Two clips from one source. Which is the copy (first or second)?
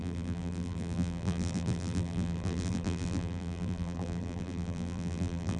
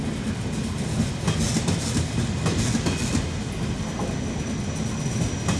first